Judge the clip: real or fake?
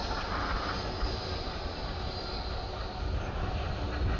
real